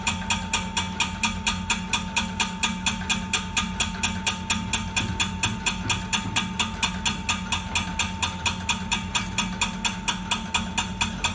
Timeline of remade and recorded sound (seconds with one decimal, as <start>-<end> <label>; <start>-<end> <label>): 0.0-11.3 recorded